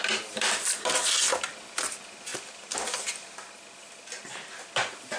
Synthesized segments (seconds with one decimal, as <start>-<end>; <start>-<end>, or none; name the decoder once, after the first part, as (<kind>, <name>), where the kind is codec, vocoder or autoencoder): none